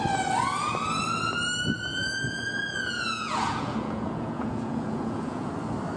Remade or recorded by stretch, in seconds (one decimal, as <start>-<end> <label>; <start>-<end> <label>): 0.0-1.9 recorded; 1.9-5.5 remade; 5.5-6.0 recorded